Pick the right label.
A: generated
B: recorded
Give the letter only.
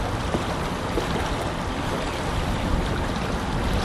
B